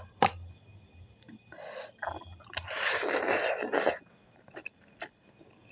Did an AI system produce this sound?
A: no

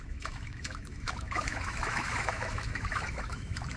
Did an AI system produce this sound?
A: yes